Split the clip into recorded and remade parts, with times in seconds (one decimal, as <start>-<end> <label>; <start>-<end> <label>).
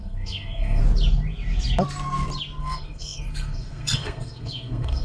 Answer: 0.0-0.8 remade; 0.8-2.6 recorded; 2.6-5.0 remade